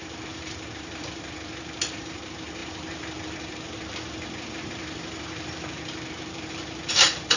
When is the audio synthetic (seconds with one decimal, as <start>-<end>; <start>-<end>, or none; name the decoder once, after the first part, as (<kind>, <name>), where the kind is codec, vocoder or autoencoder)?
0.0-7.4 (vocoder, BigVGAN v2)